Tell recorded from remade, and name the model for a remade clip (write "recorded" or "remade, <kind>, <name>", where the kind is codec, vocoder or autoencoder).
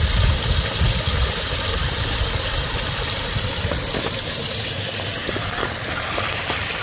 recorded